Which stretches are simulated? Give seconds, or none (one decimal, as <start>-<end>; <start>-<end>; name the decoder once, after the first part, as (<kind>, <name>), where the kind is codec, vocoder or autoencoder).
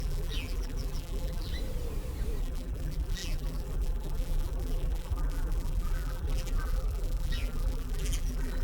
0.0-1.5 (vocoder, BigVGAN v2); 2.4-8.6